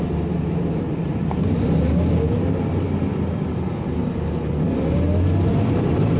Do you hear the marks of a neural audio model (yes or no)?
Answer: no